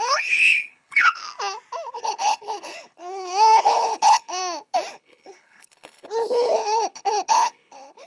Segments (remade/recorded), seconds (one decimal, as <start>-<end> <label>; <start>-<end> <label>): 0.0-1.2 remade; 1.2-1.9 recorded; 1.9-4.4 remade; 4.4-4.9 recorded; 4.9-8.1 remade